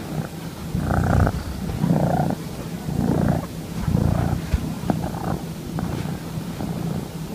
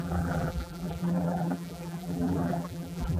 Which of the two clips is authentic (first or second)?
first